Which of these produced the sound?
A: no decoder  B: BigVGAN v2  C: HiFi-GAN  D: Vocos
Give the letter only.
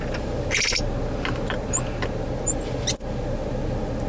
A